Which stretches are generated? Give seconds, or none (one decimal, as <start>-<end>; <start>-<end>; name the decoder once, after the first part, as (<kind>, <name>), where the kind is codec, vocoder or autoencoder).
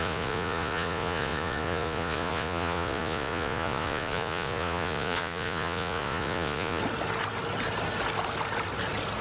0.0-6.8 (vocoder, Vocos)